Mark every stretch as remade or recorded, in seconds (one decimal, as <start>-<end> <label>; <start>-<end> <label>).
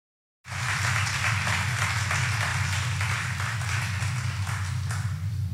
0.0-5.5 recorded